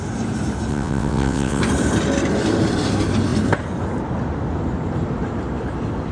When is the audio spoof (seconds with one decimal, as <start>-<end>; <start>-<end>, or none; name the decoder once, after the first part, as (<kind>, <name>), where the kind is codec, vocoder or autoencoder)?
0.7-1.6 (vocoder, WaveNeXt)

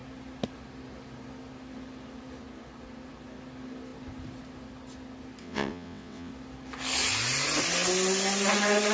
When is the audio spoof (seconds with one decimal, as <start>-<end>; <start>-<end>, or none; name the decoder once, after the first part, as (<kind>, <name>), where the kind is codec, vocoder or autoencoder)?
5.4-6.3 (vocoder, WaveNeXt)